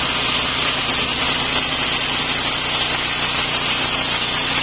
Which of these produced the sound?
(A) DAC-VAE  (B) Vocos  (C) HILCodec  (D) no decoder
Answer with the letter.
D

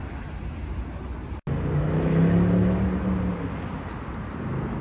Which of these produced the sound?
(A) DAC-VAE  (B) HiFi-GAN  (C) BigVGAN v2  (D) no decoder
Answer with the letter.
D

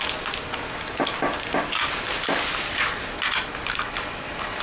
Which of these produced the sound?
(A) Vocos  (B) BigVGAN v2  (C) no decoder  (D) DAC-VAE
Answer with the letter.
C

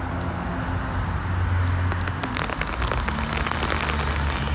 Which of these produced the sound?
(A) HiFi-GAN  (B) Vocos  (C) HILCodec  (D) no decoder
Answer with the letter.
D